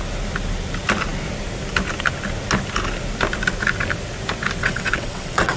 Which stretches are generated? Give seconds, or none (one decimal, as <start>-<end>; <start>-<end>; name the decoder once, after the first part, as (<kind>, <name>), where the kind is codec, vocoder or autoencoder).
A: 4.6-5.6 (vocoder, WaveNeXt)